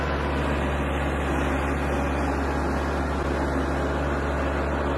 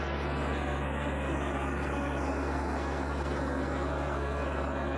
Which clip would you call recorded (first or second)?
first